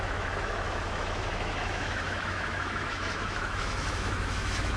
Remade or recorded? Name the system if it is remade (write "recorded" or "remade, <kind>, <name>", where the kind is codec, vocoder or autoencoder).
remade, autoencoder, DAC-VAE